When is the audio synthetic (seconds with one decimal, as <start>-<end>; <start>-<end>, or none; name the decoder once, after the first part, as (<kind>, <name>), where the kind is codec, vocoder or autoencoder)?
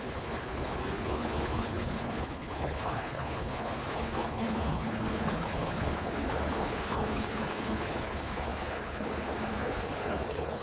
0.0-10.6 (codec, HILCodec)